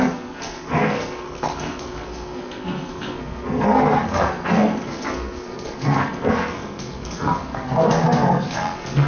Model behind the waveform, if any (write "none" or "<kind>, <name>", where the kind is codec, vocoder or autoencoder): codec, SNAC